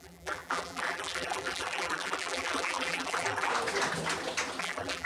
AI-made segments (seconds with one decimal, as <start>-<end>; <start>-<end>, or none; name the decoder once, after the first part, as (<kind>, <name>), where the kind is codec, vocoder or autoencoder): 0.0-3.5 (vocoder, BigVGAN v2); 4.6-5.1